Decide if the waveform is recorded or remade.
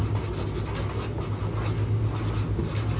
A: recorded